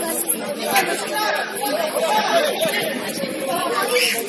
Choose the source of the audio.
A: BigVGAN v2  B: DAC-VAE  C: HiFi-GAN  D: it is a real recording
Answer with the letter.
A